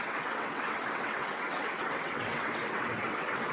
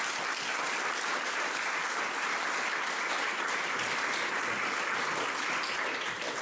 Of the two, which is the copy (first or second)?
first